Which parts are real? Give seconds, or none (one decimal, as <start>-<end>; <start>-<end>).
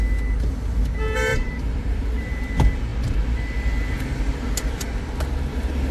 0.0-1.3; 2.3-5.9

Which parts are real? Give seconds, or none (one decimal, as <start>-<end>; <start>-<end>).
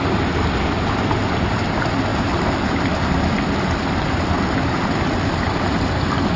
0.0-6.4